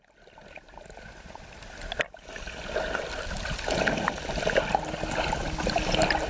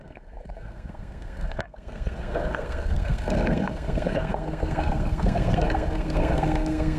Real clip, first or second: first